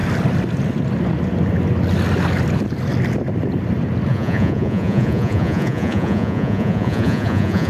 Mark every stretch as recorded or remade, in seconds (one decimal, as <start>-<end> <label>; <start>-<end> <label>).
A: 0.0-4.1 recorded; 4.1-7.7 remade